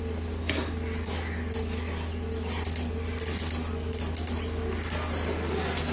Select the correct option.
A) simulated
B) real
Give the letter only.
B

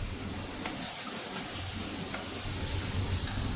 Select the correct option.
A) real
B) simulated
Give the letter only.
A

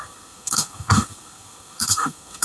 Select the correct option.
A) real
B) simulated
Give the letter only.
B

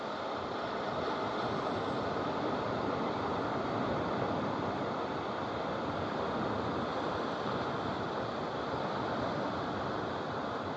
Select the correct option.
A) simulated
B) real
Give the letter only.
B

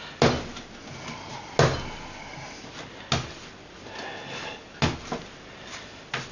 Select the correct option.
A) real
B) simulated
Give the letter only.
A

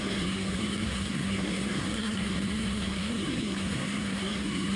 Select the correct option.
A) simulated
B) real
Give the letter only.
A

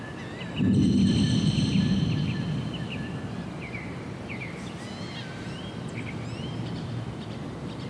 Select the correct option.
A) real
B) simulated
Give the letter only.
A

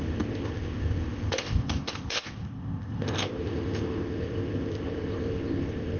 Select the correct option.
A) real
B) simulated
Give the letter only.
B